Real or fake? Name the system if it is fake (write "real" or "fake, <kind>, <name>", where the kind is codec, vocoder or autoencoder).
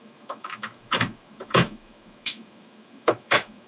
fake, autoencoder, DAC-VAE